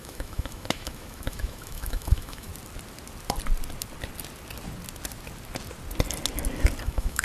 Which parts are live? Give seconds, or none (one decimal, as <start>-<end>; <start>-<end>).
2.5-6.8

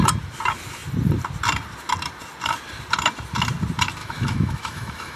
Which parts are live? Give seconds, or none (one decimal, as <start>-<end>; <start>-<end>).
0.0-4.0

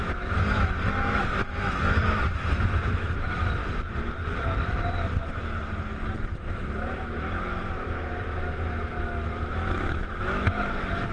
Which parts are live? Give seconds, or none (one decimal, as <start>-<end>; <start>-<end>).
3.6-6.2

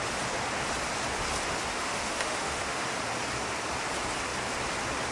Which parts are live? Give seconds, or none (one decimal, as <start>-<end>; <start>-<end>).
0.0-1.7; 2.9-5.1

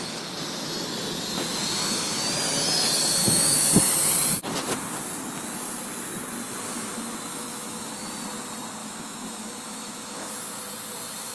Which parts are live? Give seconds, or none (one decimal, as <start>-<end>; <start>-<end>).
0.0-3.2; 3.7-7.3; 7.9-8.8; 10.3-11.3

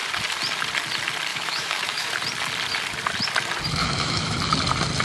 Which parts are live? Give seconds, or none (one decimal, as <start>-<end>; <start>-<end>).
0.0-1.3; 2.1-3.8; 4.4-5.0